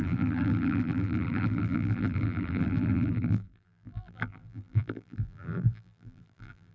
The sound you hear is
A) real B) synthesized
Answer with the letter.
B